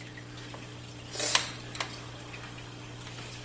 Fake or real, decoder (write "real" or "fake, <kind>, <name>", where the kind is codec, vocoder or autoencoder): real